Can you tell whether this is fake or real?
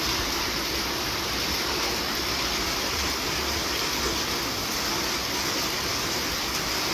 real